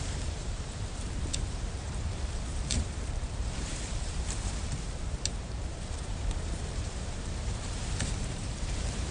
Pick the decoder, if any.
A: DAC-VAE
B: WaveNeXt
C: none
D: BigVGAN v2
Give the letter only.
D